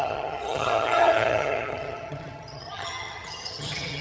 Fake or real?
fake